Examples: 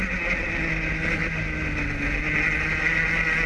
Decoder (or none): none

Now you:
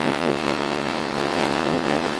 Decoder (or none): vocoder, WaveNeXt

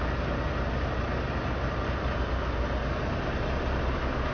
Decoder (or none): none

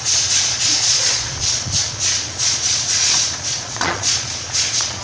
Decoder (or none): vocoder, Vocos